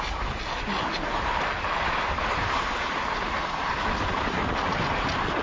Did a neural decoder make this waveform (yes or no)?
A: no